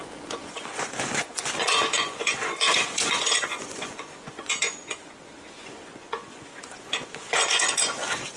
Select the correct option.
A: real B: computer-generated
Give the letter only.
B